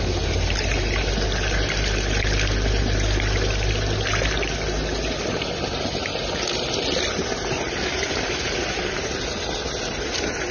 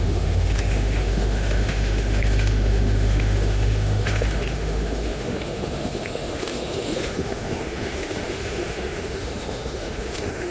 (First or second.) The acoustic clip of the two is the first